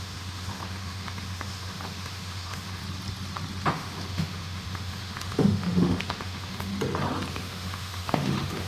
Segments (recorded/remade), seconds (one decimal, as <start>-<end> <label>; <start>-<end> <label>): 0.0-2.8 remade; 2.8-3.7 recorded; 3.7-6.7 remade; 6.7-7.3 recorded; 7.3-8.7 remade